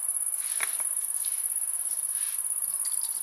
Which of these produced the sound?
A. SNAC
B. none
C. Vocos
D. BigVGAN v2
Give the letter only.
B